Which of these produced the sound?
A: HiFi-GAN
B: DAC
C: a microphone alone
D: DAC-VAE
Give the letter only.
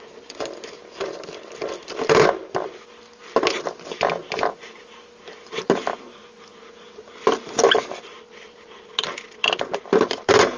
C